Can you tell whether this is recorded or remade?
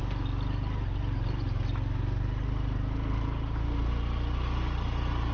recorded